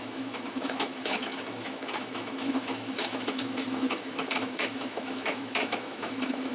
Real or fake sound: fake